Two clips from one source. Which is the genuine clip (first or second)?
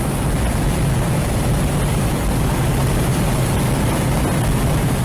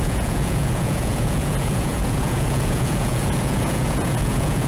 first